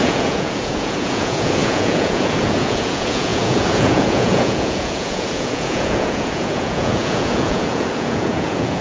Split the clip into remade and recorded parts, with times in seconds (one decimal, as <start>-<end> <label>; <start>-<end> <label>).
0.0-8.8 remade